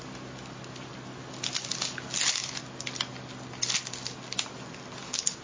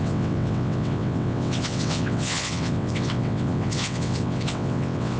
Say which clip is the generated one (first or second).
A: second